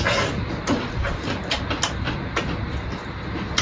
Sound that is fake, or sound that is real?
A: real